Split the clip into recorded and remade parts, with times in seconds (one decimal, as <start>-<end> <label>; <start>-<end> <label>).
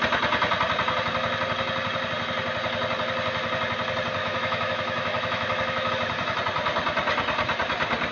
0.0-4.2 recorded; 4.2-5.9 remade; 5.9-8.1 recorded